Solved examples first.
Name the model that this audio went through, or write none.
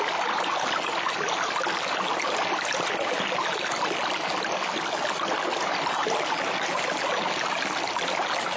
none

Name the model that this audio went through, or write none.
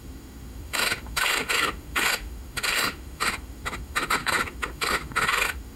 autoencoder, DAC-VAE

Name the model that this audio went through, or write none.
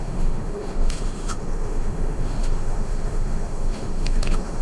autoencoder, DAC-VAE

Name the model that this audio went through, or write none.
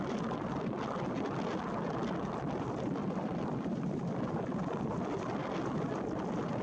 none